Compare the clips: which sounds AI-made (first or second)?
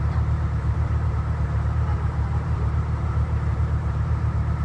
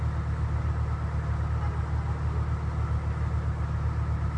first